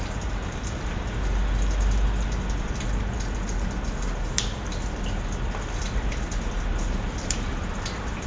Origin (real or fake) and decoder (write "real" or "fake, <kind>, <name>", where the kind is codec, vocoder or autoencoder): real